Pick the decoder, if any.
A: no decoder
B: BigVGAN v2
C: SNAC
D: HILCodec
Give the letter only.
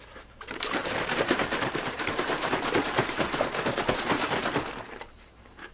B